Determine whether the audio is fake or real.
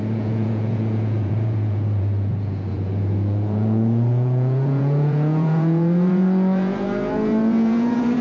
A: fake